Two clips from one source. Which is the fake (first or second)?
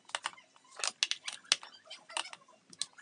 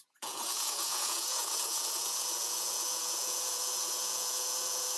second